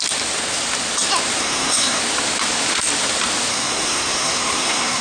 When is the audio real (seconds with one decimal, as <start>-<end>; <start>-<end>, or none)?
0.0-1.4; 2.0-3.5